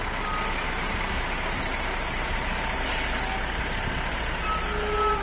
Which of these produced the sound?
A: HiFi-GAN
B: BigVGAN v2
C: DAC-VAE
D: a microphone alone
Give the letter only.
D